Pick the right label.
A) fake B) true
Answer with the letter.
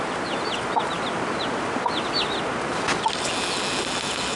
B